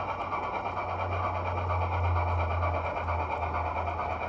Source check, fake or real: real